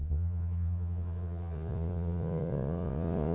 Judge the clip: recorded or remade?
remade